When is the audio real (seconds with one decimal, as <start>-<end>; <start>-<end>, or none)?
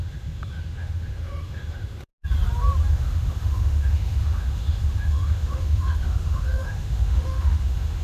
2.1-2.9